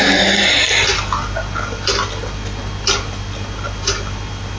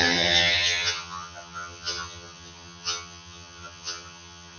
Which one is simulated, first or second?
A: second